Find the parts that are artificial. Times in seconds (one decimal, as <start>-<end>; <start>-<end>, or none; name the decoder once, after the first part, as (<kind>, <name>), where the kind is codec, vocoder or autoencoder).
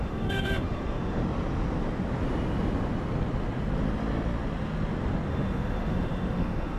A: 0.0-1.2 (autoencoder, DAC-VAE); 5.3-6.8